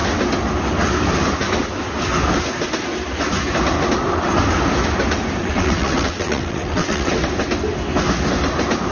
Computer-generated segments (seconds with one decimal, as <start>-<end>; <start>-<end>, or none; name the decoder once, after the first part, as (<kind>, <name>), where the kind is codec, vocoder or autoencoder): 5.4-7.1 (vocoder, WaveNeXt)